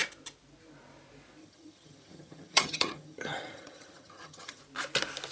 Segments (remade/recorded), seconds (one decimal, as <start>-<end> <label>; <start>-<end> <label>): 0.0-1.4 recorded; 1.4-4.6 remade; 4.6-5.3 recorded